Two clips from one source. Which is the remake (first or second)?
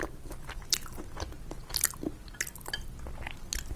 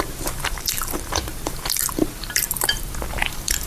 second